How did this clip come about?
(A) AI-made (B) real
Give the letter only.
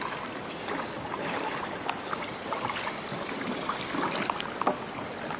B